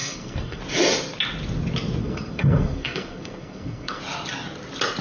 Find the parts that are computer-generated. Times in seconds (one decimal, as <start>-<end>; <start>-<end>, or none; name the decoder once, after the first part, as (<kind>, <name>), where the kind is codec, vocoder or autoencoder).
0.0-0.6 (codec, SNAC); 2.0-4.0